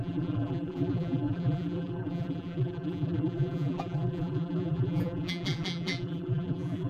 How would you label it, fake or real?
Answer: fake